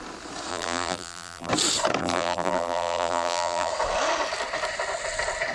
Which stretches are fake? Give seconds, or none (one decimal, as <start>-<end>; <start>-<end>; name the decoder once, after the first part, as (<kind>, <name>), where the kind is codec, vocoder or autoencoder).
0.5-1.5 (vocoder, BigVGAN v2); 2.0-3.7